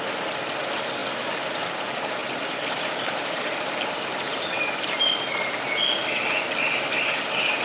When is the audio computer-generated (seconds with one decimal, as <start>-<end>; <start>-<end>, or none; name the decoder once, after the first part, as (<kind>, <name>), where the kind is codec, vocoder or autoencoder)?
2.2-3.8 (vocoder, BigVGAN v2); 6.0-7.6

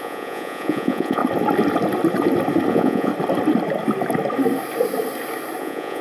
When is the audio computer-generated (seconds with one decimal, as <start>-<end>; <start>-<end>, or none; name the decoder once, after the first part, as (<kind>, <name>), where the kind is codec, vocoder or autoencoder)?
0.0-1.2 (vocoder, Vocos); 2.7-3.1; 5.6-6.0

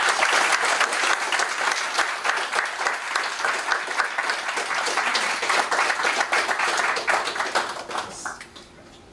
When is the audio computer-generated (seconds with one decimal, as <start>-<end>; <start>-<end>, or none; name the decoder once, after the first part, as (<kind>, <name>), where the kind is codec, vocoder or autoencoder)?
none

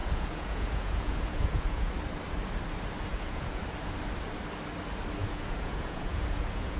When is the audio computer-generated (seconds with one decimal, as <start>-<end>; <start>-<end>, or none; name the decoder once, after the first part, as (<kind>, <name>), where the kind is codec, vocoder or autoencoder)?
0.0-1.9 (vocoder, Vocos); 3.1-3.6; 5.2-6.8

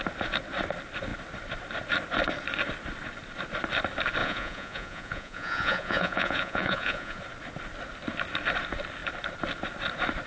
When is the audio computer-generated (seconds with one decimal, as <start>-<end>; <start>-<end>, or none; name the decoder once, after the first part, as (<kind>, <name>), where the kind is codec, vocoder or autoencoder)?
4.2-7.2 (vocoder, Vocos)

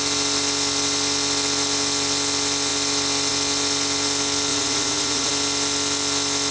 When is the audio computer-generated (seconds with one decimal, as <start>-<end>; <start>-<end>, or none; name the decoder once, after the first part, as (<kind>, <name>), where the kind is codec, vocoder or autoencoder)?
4.5-5.3 (vocoder, Vocos)

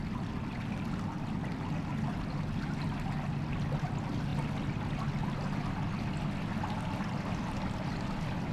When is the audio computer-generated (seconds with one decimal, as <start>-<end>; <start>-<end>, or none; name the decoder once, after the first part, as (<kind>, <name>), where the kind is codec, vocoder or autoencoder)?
none

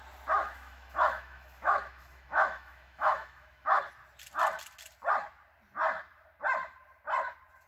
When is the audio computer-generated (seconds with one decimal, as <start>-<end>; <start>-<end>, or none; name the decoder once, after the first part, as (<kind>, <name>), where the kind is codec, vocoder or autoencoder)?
0.4-3.8 (autoencoder, DAC-VAE)